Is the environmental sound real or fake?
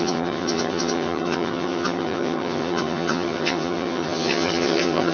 fake